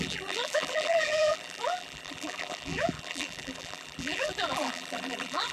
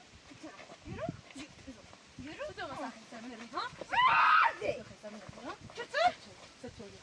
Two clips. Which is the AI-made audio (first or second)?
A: first